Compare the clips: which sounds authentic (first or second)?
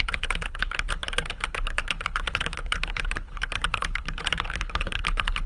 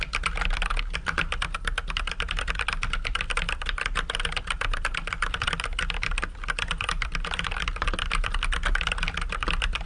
second